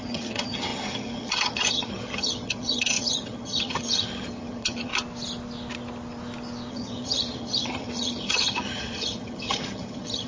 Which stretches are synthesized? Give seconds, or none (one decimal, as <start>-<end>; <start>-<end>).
0.0-4.9; 6.7-10.3